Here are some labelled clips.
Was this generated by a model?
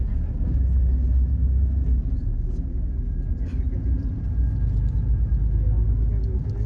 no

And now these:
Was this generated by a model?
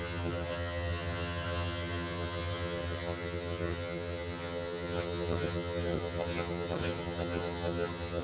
yes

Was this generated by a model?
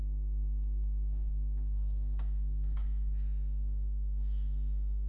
yes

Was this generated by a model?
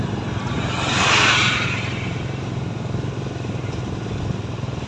no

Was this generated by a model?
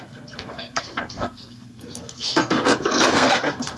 yes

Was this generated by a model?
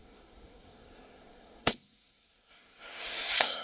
yes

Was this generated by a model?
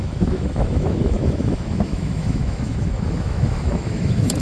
yes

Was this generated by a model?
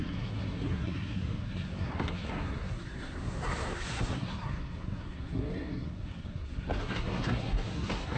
yes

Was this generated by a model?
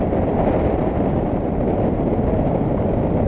no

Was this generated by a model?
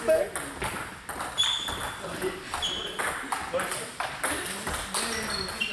no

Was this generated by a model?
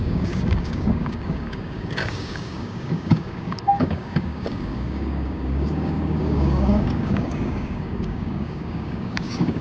yes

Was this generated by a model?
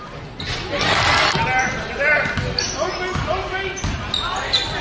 no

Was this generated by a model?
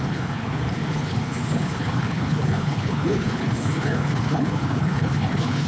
yes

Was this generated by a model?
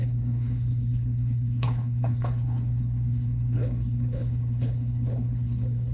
yes